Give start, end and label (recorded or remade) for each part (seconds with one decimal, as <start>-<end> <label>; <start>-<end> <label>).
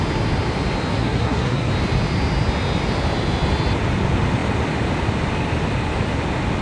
0.0-0.9 recorded; 0.9-1.7 remade; 1.7-6.6 recorded